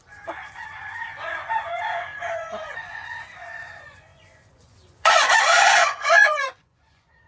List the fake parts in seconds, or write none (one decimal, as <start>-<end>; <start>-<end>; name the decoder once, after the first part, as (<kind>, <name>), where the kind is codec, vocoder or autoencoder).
0.0-7.3 (vocoder, Vocos)

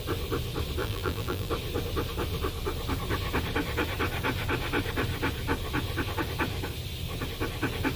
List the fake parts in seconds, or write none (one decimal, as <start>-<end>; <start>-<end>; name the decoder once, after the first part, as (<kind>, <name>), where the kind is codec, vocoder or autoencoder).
0.8-1.5 (vocoder, BigVGAN v2)

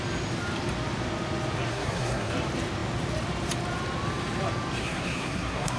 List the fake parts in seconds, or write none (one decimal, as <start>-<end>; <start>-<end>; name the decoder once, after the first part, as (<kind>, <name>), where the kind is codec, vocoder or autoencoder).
1.7-2.3 (codec, SNAC); 4.8-5.8

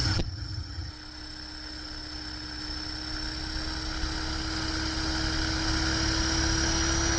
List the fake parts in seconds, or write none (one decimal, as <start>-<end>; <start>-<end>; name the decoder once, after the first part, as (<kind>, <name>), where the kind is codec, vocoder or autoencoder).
0.0-0.9 (vocoder, HiFi-GAN)

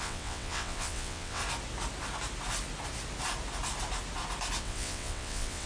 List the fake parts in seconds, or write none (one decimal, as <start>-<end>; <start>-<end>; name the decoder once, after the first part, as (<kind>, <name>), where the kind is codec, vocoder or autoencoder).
0.0-1.4 (vocoder, WaveNeXt); 4.6-5.7

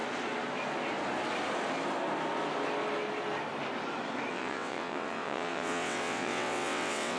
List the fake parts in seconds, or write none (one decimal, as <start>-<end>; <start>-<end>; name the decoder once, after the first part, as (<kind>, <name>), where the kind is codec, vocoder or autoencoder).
4.3-7.2 (vocoder, WaveNeXt)

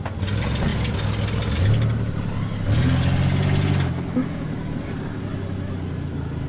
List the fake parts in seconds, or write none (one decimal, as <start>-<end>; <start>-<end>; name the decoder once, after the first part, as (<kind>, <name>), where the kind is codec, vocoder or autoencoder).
none